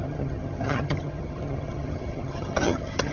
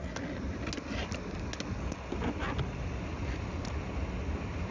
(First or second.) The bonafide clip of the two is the second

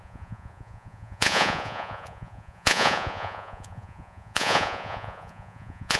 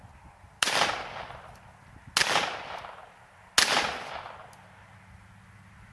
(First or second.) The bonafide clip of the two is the second